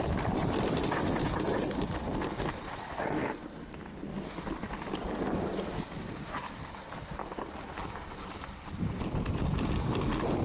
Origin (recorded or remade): recorded